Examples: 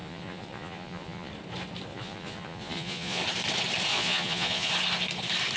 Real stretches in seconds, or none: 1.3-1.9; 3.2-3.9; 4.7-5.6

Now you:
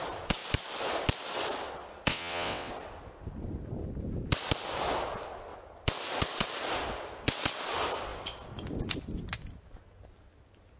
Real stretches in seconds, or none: 0.0-2.1; 2.7-10.8

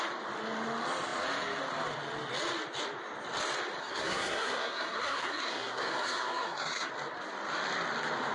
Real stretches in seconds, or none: 0.0-3.8; 6.9-8.3

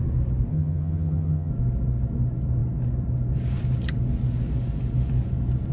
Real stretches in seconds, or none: 0.0-0.5; 1.5-5.7